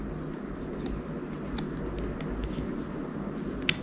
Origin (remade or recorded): recorded